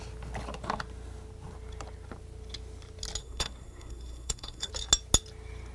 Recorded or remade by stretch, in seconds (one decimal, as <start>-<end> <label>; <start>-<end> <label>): 0.0-3.2 recorded; 3.2-4.7 remade; 4.7-5.7 recorded